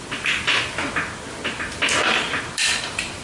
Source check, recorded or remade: recorded